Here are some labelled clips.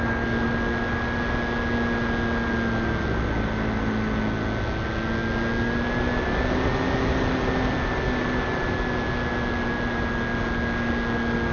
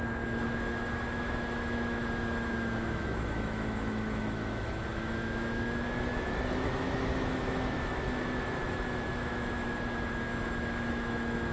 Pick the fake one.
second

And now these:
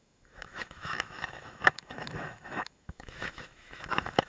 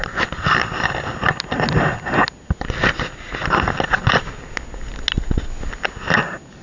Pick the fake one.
first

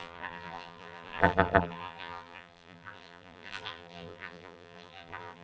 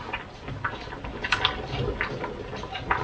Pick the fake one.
first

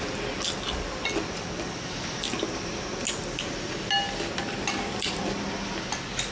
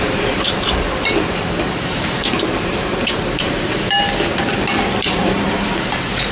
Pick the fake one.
second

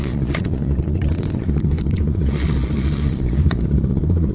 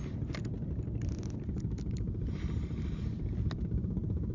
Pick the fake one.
first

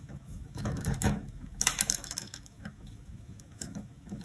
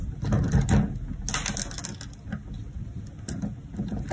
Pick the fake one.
first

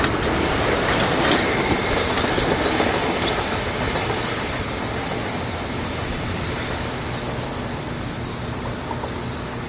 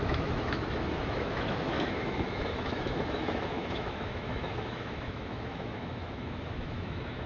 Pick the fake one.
second